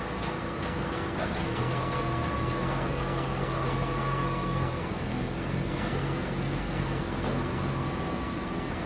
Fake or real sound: fake